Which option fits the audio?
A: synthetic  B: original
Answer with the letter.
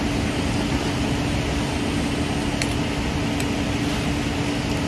B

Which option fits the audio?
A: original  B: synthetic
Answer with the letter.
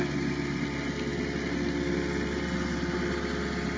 A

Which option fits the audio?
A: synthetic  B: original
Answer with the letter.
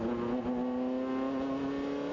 B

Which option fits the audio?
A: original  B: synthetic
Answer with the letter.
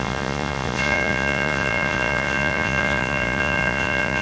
B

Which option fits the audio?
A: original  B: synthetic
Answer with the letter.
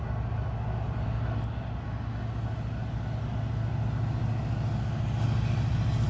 A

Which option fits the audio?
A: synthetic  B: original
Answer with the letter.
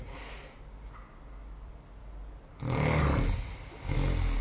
B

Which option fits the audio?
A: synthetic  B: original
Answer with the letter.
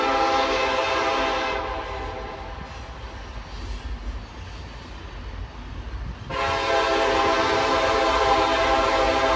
B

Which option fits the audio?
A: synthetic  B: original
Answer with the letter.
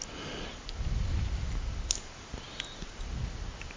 B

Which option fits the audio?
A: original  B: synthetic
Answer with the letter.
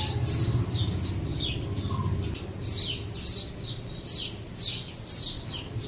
A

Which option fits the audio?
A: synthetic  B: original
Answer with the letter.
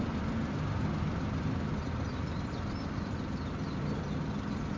B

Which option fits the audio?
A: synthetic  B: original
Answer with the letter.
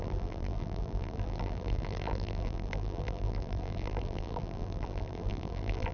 A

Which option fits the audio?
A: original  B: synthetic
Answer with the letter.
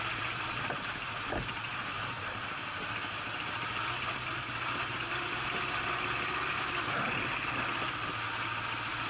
A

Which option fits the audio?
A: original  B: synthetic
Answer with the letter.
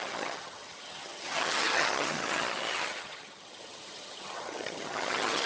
B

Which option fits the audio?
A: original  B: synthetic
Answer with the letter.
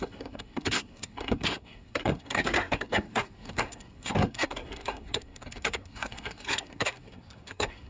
B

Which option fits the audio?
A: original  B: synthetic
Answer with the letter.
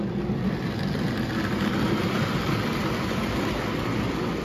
A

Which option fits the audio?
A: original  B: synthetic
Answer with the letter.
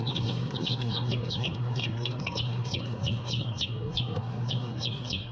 B